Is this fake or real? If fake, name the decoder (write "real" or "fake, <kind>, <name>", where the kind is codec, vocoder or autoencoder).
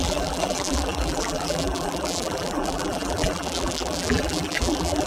fake, vocoder, BigVGAN v2